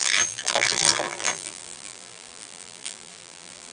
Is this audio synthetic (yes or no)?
yes